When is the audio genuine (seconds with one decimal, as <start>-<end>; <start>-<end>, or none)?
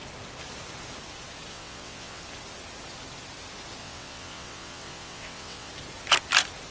0.0-1.5; 2.2-3.8; 5.7-6.7